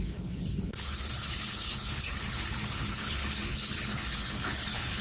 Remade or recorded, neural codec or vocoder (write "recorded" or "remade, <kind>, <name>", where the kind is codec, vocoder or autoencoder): remade, codec, HILCodec